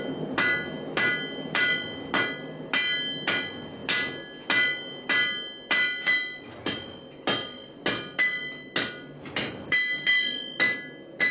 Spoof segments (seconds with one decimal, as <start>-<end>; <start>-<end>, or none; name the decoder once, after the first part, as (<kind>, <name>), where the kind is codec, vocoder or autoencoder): none